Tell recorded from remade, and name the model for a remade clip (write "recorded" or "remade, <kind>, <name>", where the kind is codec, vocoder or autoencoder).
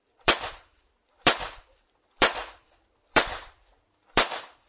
remade, vocoder, BigVGAN v2